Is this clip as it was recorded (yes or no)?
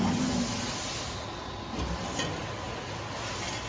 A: yes